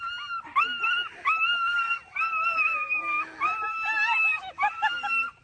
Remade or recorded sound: recorded